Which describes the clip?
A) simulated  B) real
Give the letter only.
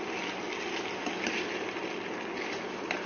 B